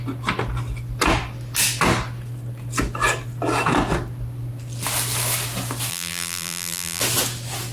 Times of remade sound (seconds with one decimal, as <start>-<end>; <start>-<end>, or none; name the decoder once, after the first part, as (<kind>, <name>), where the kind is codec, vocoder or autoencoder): 5.9-7.0 (vocoder, BigVGAN v2)